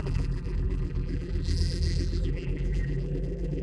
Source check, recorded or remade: remade